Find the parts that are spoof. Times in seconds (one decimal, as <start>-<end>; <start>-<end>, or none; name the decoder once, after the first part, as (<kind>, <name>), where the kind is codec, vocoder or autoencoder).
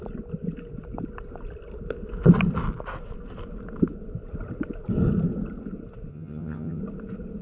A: 6.1-6.8 (vocoder, HiFi-GAN)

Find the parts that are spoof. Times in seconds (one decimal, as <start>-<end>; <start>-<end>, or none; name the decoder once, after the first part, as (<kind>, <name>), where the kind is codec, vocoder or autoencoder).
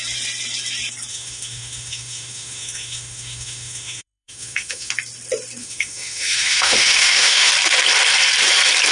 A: 1.1-4.9 (autoencoder, DAC-VAE); 5.6-7.5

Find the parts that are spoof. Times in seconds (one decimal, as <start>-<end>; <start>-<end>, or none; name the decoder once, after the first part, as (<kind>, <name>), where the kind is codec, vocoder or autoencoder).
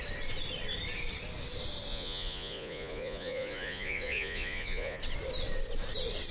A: 1.9-5.0 (vocoder, Vocos)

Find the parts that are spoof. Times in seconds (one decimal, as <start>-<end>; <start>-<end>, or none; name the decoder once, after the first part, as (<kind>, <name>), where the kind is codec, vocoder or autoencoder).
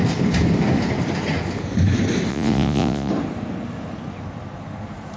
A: 2.3-3.1 (vocoder, Vocos)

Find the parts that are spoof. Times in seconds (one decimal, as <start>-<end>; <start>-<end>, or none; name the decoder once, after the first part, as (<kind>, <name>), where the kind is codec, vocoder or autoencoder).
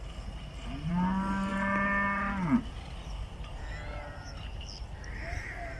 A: none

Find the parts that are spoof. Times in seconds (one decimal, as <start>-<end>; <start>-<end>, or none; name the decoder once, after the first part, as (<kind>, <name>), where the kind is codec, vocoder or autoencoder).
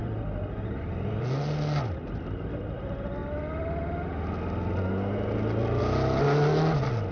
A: none